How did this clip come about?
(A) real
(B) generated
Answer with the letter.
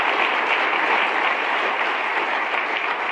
A